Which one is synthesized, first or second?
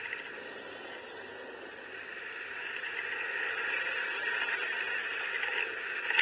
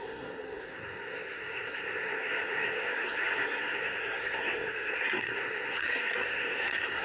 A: second